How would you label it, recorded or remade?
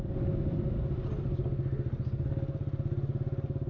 recorded